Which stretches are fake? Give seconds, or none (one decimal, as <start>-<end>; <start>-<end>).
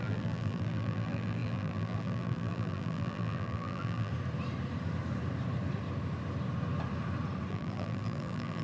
0.0-4.1; 7.5-8.6